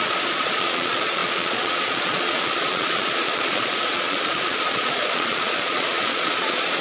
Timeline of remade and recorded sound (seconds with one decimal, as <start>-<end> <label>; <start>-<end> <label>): 0.0-6.8 remade